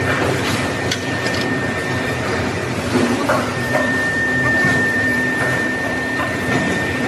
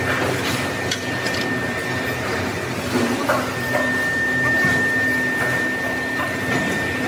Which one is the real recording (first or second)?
second